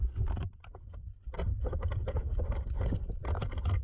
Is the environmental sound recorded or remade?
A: recorded